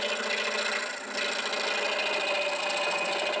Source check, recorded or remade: recorded